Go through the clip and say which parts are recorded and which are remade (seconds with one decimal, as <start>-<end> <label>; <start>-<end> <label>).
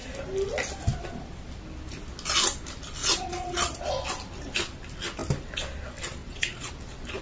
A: 0.0-3.0 recorded; 3.0-3.9 remade; 3.9-6.2 recorded; 6.2-6.7 remade; 6.7-7.2 recorded